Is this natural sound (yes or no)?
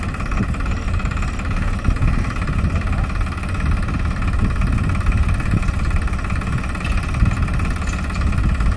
yes